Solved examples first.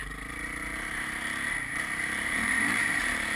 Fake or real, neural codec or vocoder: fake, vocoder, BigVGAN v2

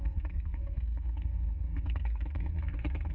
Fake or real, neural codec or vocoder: fake, codec, SNAC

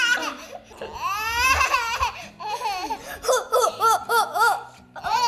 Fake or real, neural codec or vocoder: real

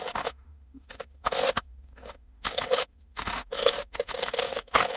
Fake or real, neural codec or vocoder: fake, autoencoder, DAC-VAE